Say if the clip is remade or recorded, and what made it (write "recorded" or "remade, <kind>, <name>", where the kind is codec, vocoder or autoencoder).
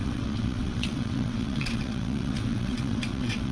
remade, vocoder, WaveNeXt